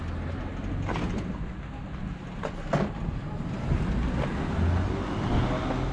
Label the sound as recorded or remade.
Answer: recorded